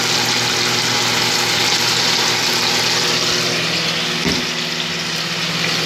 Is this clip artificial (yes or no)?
no